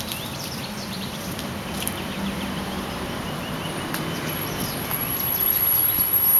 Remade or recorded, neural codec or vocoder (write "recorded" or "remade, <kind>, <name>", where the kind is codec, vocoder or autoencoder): remade, vocoder, BigVGAN v2